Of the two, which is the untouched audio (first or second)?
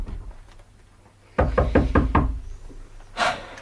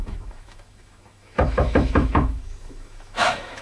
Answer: first